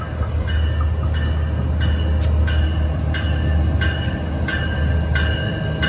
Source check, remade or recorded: recorded